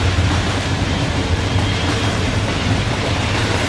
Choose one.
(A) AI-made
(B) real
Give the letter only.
A